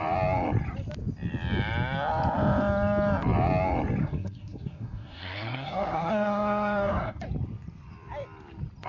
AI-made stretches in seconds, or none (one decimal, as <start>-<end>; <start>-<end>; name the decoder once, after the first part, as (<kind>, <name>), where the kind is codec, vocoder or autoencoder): 4.0-7.2 (codec, SNAC)